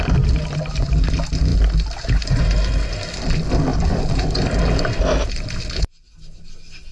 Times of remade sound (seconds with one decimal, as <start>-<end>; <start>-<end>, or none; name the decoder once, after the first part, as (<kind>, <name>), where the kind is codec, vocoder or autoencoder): 1.5-2.4 (vocoder, BigVGAN v2); 3.7-6.4